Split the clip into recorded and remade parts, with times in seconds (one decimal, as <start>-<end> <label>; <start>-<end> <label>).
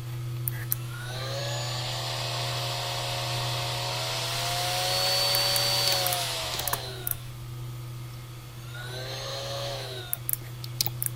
0.0-0.6 recorded; 0.6-1.4 remade; 1.4-6.1 recorded; 6.1-7.3 remade; 7.3-9.3 recorded; 9.3-10.0 remade; 10.0-11.2 recorded